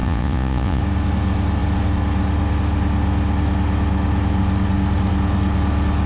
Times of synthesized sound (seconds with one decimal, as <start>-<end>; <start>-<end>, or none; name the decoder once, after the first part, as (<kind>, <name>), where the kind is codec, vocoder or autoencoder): 0.0-0.8 (vocoder, Vocos)